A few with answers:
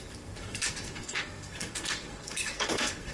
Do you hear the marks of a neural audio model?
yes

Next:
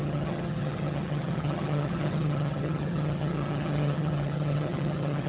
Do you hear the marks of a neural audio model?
yes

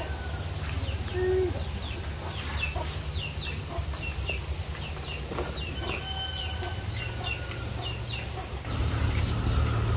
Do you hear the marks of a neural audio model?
no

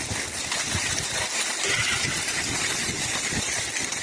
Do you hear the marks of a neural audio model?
no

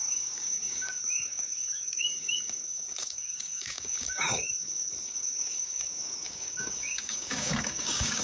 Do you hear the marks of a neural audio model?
yes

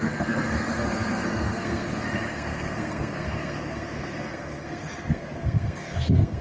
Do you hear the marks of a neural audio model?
yes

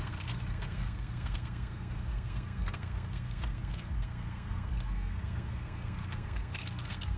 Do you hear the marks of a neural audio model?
yes